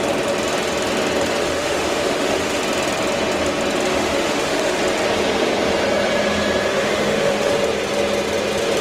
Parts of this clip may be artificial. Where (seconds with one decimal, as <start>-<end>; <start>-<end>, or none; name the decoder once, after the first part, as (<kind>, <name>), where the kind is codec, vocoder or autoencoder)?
1.4-2.6 (autoencoder, DAC-VAE); 3.9-4.8; 6.7-7.5